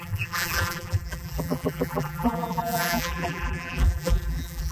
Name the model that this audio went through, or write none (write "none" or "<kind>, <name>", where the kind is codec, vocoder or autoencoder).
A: vocoder, BigVGAN v2